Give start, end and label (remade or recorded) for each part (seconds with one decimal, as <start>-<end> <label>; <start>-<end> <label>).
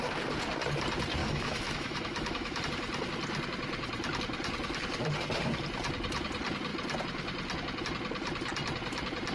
0.0-1.2 recorded; 1.2-2.6 remade; 2.6-9.3 recorded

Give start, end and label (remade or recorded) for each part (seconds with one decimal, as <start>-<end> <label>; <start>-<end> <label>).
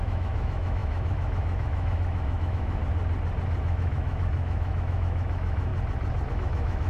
0.0-2.8 remade; 2.8-3.6 recorded; 3.6-5.7 remade; 5.7-6.3 recorded; 6.3-6.9 remade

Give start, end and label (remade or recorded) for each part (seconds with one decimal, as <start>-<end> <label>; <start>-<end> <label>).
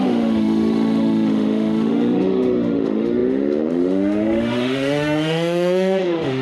0.0-6.4 remade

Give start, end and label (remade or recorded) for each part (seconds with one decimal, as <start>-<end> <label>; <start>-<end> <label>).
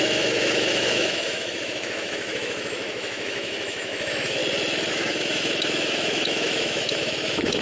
0.0-4.4 remade; 4.4-4.9 recorded; 4.9-7.6 remade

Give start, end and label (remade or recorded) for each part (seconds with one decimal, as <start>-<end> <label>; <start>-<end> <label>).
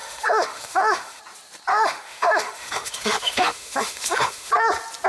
0.0-1.2 remade; 1.2-1.7 recorded; 1.7-4.5 remade; 4.5-5.1 recorded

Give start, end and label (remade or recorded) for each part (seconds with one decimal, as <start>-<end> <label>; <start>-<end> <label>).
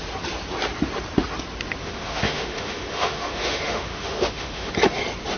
0.0-1.8 recorded; 1.8-4.7 remade; 4.7-5.4 recorded